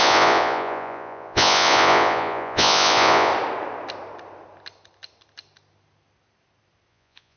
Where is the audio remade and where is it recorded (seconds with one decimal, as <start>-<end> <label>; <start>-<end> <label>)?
0.0-3.3 remade; 3.3-6.9 recorded; 6.9-7.4 remade